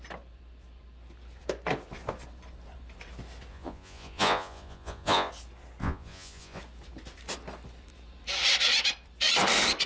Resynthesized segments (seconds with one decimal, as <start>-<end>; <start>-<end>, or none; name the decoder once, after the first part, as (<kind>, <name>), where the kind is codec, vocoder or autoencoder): 3.5-5.3 (vocoder, Vocos); 5.8-6.6